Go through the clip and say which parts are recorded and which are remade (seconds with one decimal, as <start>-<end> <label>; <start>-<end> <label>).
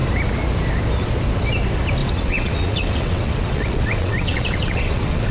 0.0-2.0 recorded; 2.0-5.3 remade